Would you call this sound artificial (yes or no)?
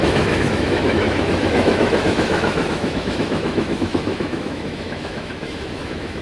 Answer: yes